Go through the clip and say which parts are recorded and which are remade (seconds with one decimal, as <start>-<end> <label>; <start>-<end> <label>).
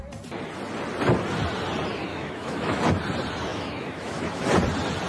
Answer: 0.0-2.1 recorded; 2.1-2.8 remade; 2.8-3.5 recorded; 3.5-4.4 remade; 4.4-5.1 recorded